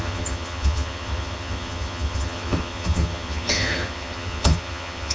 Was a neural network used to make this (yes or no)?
yes